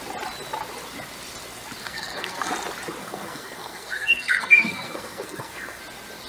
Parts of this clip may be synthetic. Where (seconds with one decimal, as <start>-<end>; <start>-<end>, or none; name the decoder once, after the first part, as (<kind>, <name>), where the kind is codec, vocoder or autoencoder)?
1.8-2.5 (codec, SNAC); 3.0-5.8